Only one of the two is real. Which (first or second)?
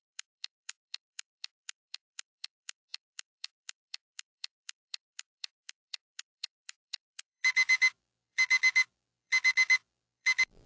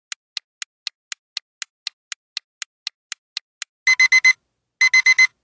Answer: second